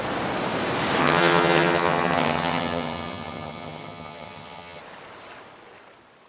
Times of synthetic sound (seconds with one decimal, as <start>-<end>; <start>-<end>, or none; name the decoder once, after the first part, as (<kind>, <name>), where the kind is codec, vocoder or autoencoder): 1.0-4.8 (vocoder, HiFi-GAN)